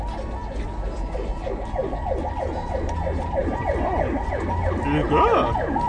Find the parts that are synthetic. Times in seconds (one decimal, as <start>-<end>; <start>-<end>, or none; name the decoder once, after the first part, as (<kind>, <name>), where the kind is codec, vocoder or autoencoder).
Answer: none

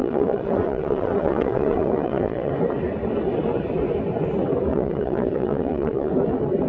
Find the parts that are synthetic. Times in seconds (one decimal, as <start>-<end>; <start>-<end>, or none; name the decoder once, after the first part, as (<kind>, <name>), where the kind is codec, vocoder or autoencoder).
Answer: 0.0-2.5 (vocoder, WaveNeXt); 4.7-6.1